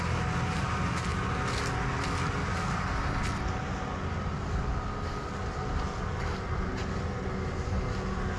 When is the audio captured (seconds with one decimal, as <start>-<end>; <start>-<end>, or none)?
0.0-8.4